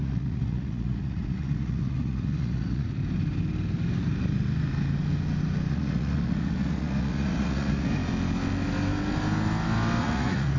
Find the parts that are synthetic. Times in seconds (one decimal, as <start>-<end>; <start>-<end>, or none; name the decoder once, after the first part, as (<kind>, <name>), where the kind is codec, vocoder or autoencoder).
0.0-3.0 (vocoder, Vocos); 5.7-8.0; 10.0-10.6